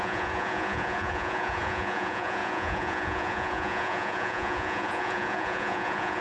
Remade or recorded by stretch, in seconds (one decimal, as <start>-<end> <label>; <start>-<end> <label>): 0.0-6.2 remade